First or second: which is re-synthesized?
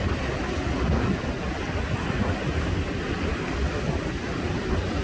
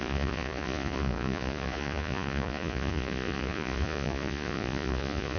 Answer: second